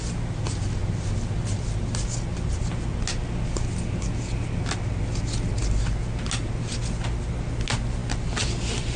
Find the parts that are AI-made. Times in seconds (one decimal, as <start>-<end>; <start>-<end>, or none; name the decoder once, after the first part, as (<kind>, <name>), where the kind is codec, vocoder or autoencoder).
none